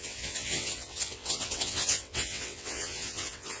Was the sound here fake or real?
fake